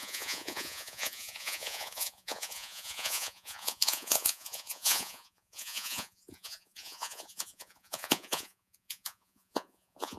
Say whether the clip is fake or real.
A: fake